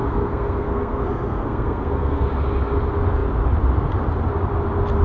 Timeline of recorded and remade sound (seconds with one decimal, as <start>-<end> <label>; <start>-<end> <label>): 0.0-2.3 remade; 2.3-5.0 recorded